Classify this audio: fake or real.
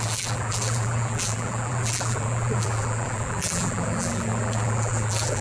fake